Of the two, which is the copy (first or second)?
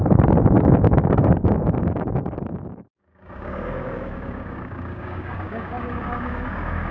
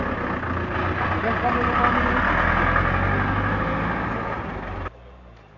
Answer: first